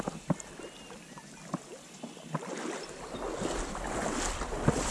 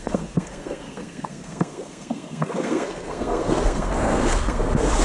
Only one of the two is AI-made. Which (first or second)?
second